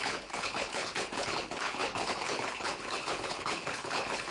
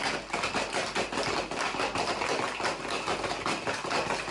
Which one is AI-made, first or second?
first